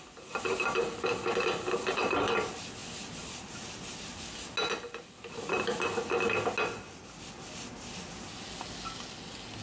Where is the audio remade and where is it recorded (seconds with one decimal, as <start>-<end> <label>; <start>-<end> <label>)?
0.0-9.6 recorded